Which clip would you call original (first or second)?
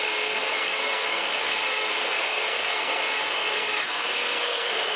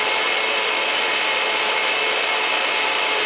second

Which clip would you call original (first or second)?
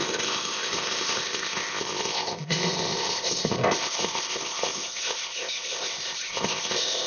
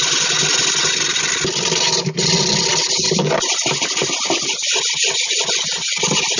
second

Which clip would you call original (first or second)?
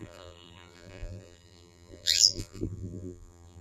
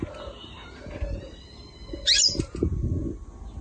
second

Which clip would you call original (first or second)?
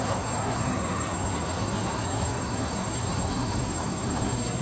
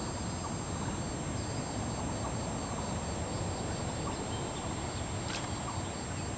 second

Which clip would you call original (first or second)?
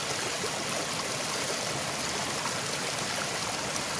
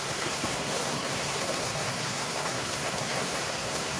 first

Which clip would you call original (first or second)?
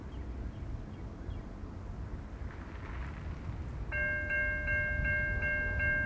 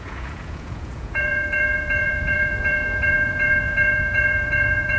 first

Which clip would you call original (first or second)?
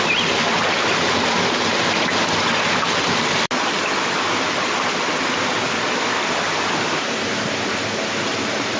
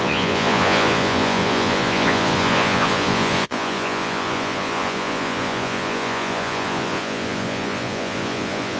first